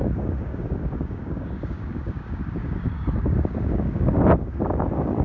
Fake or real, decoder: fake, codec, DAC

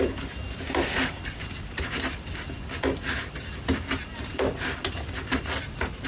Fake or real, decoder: real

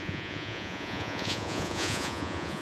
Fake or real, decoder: fake, vocoder, Vocos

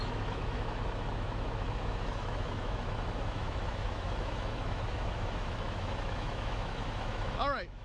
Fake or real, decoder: fake, autoencoder, DAC-VAE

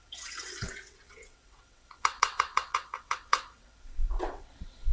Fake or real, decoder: fake, vocoder, WaveNeXt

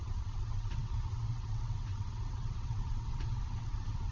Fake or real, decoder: fake, vocoder, WaveNeXt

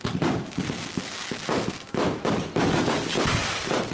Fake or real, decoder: fake, vocoder, BigVGAN v2